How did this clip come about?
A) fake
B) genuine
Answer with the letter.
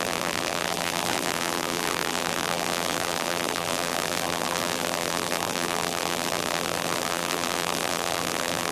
A